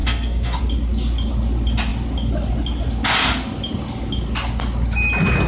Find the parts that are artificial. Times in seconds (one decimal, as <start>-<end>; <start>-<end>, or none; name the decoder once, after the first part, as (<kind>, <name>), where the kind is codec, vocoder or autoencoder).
0.0-0.6 (codec, SNAC)